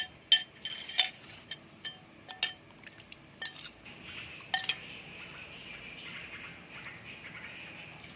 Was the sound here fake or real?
real